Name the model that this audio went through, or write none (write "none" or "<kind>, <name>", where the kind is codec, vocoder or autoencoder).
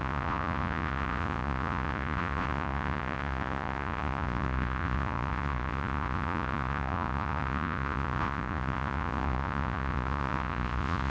vocoder, Vocos